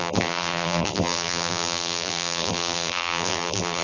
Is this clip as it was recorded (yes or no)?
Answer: no